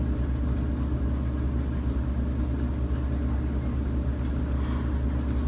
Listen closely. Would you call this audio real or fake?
real